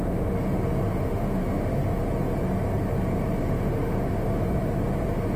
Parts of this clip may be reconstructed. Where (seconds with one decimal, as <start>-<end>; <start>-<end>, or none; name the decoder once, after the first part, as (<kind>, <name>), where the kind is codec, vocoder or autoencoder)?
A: 1.1-1.8 (autoencoder, DAC-VAE); 3.4-4.4